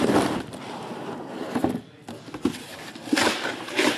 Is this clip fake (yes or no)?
yes